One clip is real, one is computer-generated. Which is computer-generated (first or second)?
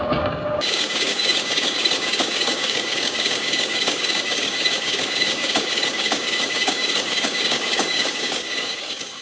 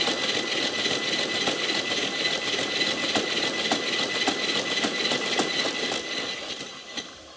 first